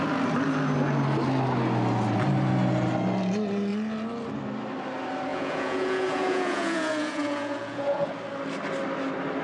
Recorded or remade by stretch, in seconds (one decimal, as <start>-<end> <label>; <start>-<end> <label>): 0.0-5.3 recorded; 5.3-8.1 remade; 8.1-9.4 recorded